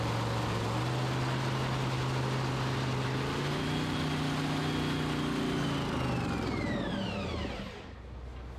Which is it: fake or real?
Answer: real